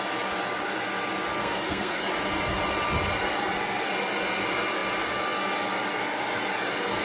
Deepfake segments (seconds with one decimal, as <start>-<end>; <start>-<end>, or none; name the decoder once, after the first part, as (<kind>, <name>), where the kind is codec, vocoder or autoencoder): 1.4-2.0 (codec, SNAC)

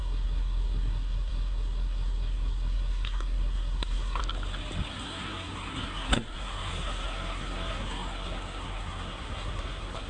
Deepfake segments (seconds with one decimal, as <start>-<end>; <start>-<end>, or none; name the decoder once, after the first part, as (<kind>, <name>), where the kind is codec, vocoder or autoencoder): 0.0-4.2 (codec, SNAC); 4.9-10.1

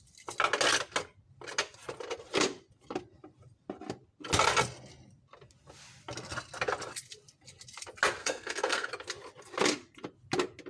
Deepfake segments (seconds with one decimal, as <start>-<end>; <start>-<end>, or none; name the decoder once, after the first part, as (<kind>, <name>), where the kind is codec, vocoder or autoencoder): 8.2-8.9 (codec, SNAC)

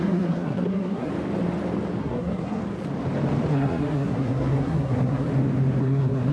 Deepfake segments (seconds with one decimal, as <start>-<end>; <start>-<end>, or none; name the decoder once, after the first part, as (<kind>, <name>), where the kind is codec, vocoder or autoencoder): 0.0-1.1 (codec, SNAC); 2.0-2.6; 3.5-5.3; 5.8-6.3

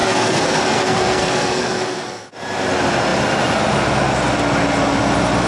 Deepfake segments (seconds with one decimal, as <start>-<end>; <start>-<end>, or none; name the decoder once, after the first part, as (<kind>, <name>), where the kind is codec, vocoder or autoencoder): 0.0-2.3 (codec, SNAC)

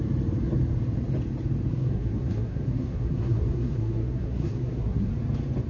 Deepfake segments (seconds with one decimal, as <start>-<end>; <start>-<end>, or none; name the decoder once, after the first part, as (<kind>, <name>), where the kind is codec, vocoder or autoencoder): 1.7-5.1 (codec, SNAC)

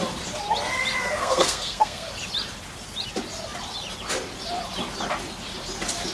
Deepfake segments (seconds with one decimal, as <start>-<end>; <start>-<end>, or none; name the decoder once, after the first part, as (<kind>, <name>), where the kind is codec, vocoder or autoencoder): 1.0-2.1 (codec, SNAC)

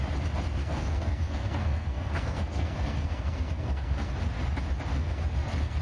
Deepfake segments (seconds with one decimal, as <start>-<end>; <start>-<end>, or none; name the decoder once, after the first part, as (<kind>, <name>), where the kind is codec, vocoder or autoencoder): 0.6-4.1 (codec, SNAC); 4.9-5.8